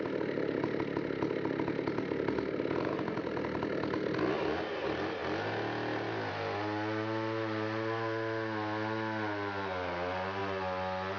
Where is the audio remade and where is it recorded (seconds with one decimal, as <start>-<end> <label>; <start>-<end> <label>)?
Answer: 0.0-11.2 recorded